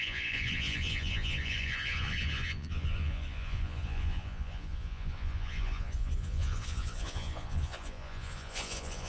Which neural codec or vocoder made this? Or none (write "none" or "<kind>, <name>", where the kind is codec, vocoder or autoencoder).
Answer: vocoder, Vocos